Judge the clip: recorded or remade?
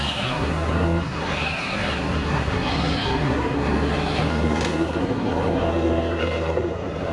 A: remade